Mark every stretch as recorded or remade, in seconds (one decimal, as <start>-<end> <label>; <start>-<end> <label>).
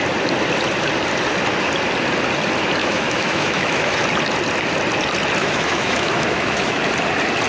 0.0-2.8 recorded; 2.8-4.0 remade; 4.0-5.4 recorded; 5.4-6.8 remade; 6.8-7.5 recorded